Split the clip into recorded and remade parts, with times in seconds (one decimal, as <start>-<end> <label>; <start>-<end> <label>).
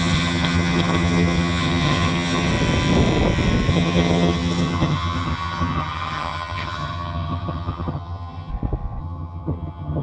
0.0-2.5 remade; 2.5-3.7 recorded; 3.7-8.5 remade; 8.5-9.0 recorded; 9.0-10.0 remade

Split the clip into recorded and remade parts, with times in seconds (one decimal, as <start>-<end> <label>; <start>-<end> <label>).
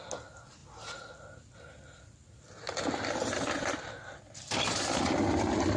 0.0-5.8 recorded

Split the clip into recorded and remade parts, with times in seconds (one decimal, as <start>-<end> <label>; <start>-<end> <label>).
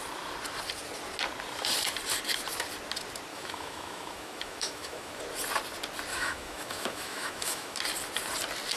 0.0-3.3 recorded; 3.3-5.2 remade; 5.2-6.1 recorded; 6.1-7.8 remade; 7.8-8.8 recorded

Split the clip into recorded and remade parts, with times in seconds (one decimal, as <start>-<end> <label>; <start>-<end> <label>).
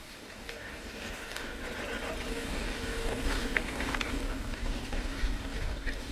0.0-1.6 remade; 1.6-2.3 recorded; 2.3-6.1 remade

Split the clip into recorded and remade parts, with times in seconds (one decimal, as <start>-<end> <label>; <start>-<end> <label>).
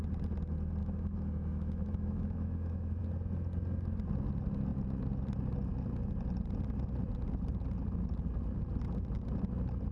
0.0-0.8 recorded; 0.8-3.0 remade; 3.0-9.9 recorded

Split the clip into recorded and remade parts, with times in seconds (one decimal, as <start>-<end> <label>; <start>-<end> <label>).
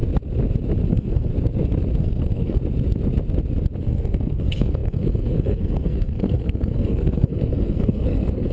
0.0-0.9 recorded; 0.9-1.3 remade; 1.3-2.0 recorded; 2.0-2.6 remade; 2.6-3.8 recorded; 3.8-8.5 remade